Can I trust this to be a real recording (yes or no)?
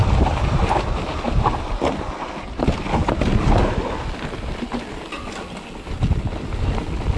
yes